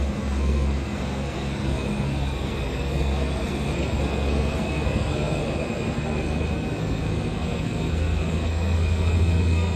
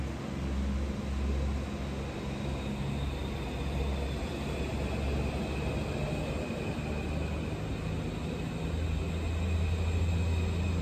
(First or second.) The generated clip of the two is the first